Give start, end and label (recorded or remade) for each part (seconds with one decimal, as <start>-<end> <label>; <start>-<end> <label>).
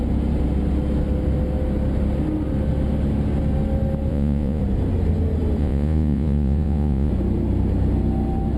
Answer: 0.0-4.1 recorded; 4.1-4.6 remade; 4.6-5.6 recorded; 5.6-7.1 remade; 7.1-8.6 recorded